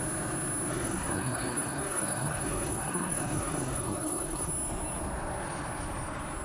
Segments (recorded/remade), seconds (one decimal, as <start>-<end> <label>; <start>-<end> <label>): 0.0-0.7 recorded; 0.7-4.5 remade; 4.5-6.4 recorded